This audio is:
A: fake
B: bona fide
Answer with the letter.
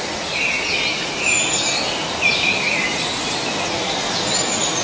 B